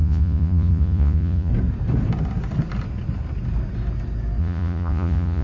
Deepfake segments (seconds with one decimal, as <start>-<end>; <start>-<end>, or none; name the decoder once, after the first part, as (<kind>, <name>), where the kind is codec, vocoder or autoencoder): 0.0-1.5 (vocoder, Vocos); 4.4-5.4